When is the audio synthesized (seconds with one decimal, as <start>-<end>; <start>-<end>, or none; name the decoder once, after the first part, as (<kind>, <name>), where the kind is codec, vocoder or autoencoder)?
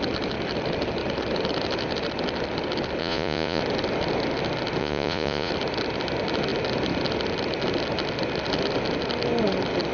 3.0-3.6 (vocoder, Vocos); 4.8-5.5